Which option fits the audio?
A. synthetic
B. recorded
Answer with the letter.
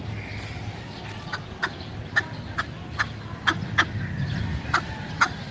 B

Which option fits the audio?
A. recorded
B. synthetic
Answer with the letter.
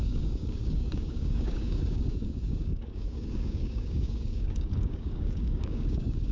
B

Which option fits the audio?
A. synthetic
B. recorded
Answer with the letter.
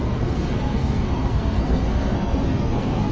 A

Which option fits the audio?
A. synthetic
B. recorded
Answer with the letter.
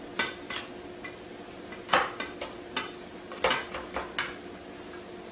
B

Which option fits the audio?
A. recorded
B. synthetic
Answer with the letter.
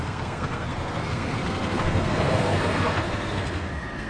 B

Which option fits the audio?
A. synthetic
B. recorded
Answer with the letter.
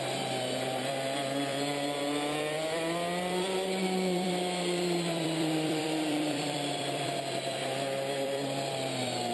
A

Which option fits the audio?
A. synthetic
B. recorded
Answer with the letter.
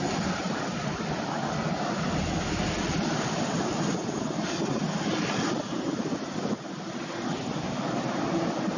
B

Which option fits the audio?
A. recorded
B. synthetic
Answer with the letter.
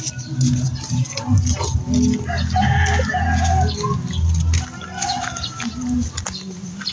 A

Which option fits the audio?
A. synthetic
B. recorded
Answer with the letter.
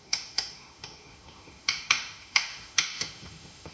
A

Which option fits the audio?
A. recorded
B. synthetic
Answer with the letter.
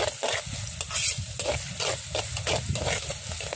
A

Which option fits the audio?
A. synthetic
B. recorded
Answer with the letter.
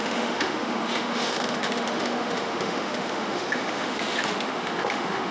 A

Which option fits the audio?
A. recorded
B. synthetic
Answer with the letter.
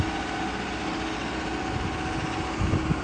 A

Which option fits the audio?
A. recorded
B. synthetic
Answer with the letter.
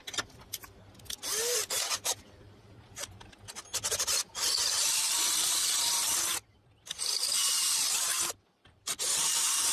B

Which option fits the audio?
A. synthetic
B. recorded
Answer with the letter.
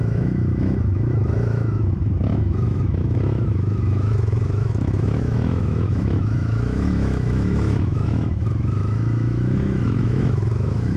A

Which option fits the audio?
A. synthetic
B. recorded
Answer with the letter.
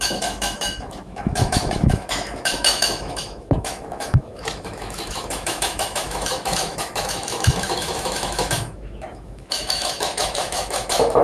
A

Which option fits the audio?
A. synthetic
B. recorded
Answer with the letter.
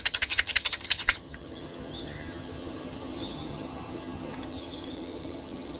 A